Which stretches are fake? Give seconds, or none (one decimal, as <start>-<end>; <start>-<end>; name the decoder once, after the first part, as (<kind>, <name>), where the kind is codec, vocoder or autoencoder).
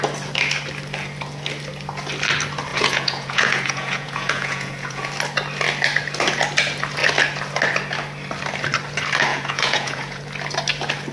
2.7-5.1 (vocoder, Vocos); 9.3-10.2